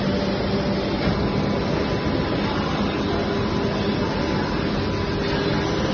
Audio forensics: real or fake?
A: real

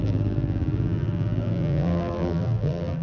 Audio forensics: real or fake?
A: fake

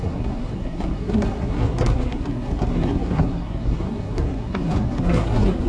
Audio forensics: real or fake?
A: fake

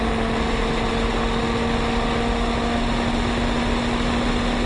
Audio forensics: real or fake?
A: real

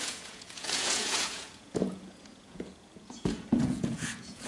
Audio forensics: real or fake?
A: fake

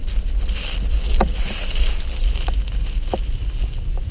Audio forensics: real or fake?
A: real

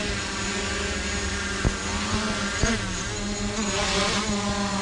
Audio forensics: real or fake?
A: real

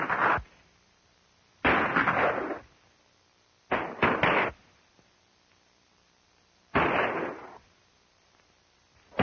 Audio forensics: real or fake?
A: fake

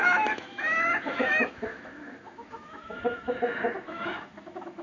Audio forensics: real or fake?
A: fake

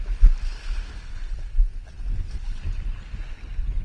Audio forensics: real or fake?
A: real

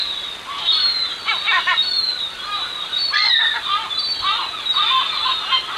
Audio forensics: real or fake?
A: real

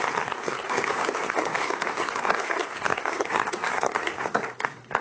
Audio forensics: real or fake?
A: fake